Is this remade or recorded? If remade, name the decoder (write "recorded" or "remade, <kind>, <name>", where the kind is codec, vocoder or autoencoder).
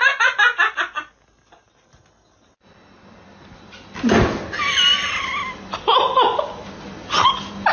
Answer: recorded